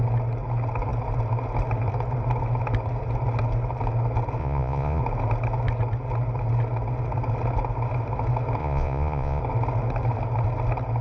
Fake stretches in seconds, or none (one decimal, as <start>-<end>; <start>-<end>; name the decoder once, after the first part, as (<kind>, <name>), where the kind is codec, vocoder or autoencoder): 4.4-5.0 (vocoder, Vocos); 8.6-9.4